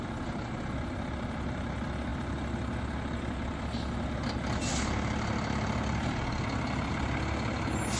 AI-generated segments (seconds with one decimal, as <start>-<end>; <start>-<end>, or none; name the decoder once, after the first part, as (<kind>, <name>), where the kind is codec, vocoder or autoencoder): none